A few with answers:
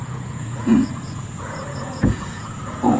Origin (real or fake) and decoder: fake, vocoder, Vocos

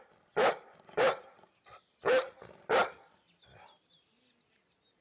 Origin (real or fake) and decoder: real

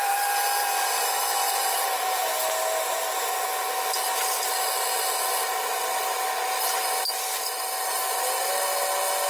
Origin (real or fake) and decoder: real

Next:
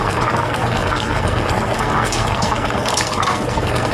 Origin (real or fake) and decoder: fake, codec, SNAC